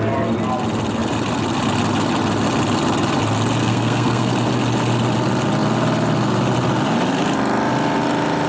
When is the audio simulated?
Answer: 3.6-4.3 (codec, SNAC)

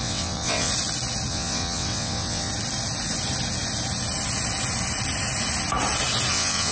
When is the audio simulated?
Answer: 0.0-0.7 (vocoder, WaveNeXt); 1.3-2.5; 6.3-6.7

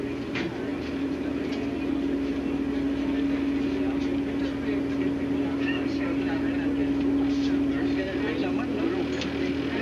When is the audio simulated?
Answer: 0.7-1.3 (vocoder, BigVGAN v2)

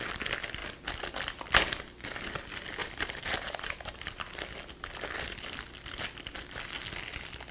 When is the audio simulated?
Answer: 2.8-4.2 (vocoder, BigVGAN v2)

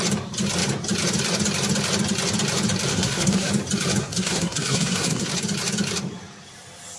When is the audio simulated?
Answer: 2.9-3.5 (codec, SNAC); 4.0-5.3

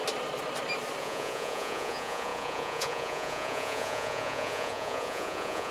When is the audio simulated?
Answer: 1.0-5.7 (vocoder, Vocos)

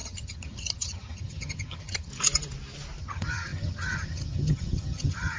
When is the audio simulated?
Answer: 0.0-2.1 (vocoder, HiFi-GAN); 3.0-5.4